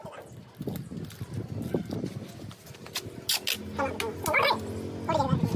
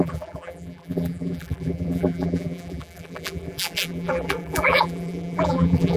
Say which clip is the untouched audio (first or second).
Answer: first